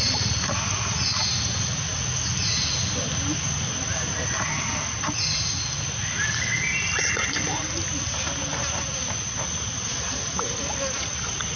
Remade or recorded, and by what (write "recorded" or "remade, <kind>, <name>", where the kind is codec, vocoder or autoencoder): recorded